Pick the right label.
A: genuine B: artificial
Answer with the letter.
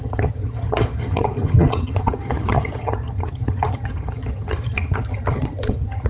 B